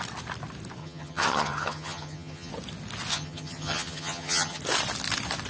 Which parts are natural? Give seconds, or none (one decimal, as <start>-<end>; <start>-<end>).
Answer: 0.0-0.8; 2.5-3.1; 4.6-5.5